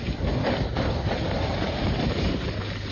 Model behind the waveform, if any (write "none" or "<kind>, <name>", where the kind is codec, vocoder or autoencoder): none